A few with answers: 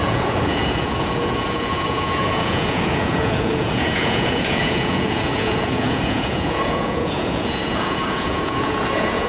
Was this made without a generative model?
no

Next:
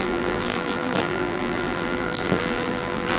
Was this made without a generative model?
no